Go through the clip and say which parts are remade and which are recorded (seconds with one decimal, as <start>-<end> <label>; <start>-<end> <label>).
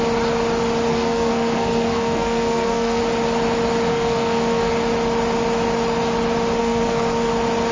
0.0-0.9 recorded; 0.9-3.0 remade; 3.0-3.9 recorded; 3.9-4.7 remade; 4.7-6.6 recorded; 6.6-7.3 remade; 7.3-7.7 recorded